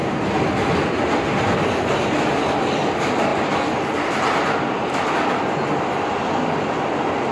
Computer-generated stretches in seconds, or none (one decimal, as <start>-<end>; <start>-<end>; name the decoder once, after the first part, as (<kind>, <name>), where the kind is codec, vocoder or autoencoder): none